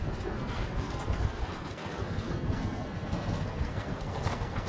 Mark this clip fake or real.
fake